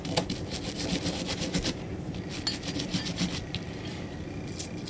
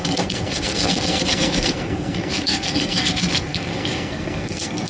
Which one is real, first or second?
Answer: first